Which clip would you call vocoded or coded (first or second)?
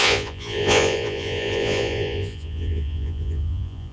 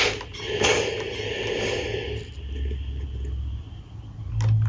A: first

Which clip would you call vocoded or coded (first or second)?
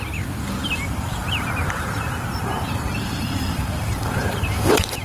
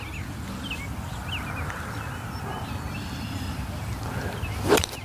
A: first